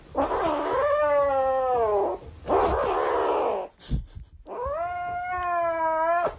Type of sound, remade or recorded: recorded